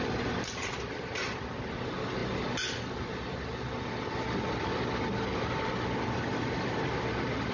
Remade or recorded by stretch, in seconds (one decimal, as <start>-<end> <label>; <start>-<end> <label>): 0.0-7.5 recorded